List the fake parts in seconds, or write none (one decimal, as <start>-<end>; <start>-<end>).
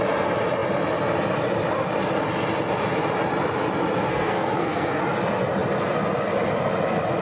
4.1-5.0